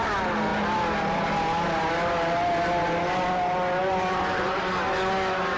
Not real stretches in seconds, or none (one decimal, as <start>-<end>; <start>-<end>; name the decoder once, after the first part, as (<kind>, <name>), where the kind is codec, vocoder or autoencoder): 3.8-4.6 (vocoder, BigVGAN v2)